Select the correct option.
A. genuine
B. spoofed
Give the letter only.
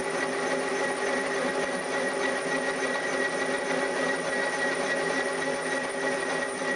A